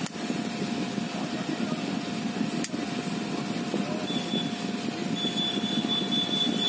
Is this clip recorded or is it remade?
recorded